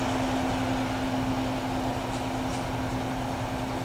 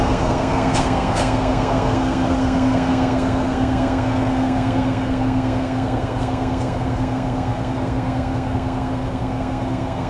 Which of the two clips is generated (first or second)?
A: second